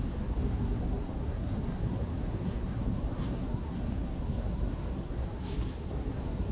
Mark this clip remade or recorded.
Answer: remade